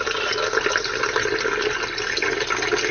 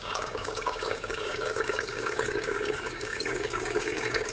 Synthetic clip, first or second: second